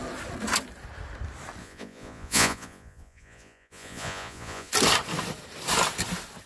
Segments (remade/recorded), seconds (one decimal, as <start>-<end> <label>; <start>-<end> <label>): 0.0-1.6 recorded; 1.6-4.7 remade; 4.7-6.5 recorded